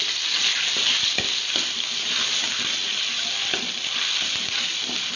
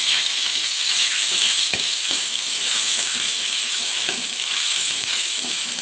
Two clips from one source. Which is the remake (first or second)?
second